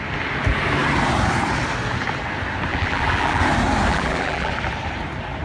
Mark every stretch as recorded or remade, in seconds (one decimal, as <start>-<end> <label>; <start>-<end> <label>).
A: 0.0-2.7 recorded; 2.7-3.4 remade; 3.4-3.9 recorded; 3.9-4.5 remade; 4.5-5.4 recorded